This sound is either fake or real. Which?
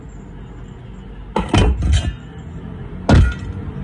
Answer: real